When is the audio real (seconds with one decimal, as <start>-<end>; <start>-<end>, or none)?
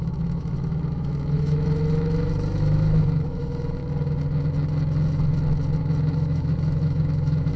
3.8-5.8